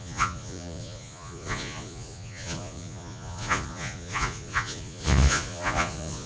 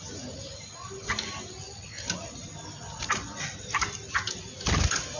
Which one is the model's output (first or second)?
first